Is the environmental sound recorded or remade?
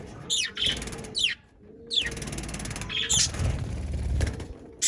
recorded